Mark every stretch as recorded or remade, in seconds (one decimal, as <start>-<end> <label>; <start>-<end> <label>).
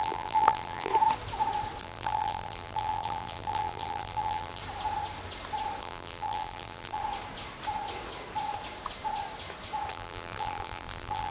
0.0-0.9 remade; 0.9-1.8 recorded; 1.8-4.6 remade; 4.6-5.8 recorded; 5.8-7.0 remade; 7.0-9.9 recorded; 9.9-11.3 remade